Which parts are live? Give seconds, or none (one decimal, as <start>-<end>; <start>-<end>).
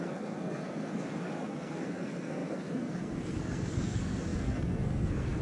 none